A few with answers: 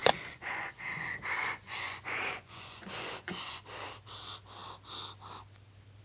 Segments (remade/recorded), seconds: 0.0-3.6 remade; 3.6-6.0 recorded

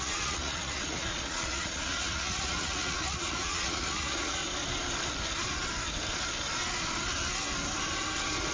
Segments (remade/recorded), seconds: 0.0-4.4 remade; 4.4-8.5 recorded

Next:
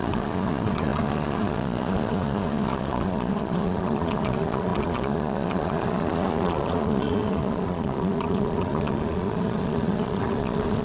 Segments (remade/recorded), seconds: 0.0-10.8 remade

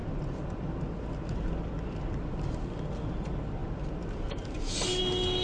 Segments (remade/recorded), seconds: 0.0-5.4 recorded

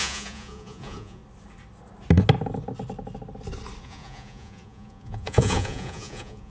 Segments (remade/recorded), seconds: 0.0-1.2 remade; 1.2-3.8 recorded; 3.8-6.5 remade

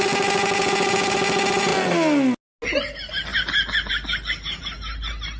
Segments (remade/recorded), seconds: 0.0-5.4 recorded